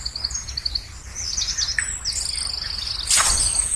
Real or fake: real